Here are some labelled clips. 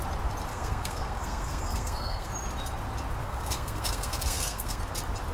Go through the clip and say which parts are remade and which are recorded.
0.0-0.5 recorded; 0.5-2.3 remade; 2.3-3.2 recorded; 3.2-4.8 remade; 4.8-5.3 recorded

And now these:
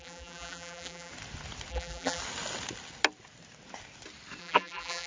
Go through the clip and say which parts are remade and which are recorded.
0.0-1.1 remade; 1.1-1.7 recorded; 1.7-2.2 remade; 2.2-4.4 recorded; 4.4-5.1 remade

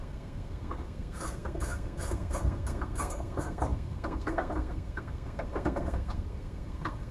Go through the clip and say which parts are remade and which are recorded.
0.0-7.1 remade

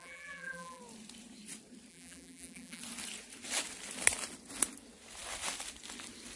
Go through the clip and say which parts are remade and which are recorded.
0.0-0.8 remade; 0.8-1.9 recorded; 1.9-2.8 remade; 2.8-6.4 recorded

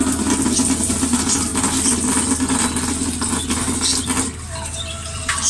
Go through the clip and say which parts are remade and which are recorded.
0.0-5.5 recorded